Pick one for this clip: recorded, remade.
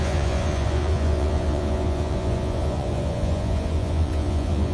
remade